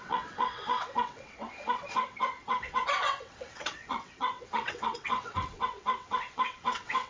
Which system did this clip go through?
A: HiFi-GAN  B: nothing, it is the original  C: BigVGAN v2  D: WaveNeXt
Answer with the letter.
D